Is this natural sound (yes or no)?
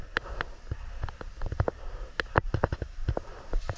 yes